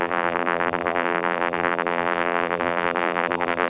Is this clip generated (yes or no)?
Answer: yes